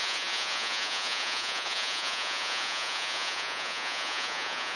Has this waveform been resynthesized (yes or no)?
yes